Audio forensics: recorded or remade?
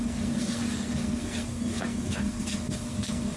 remade